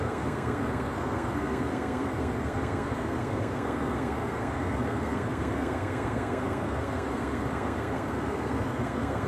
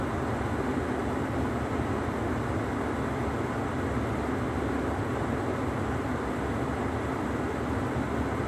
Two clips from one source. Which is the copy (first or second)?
first